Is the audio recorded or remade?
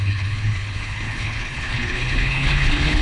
remade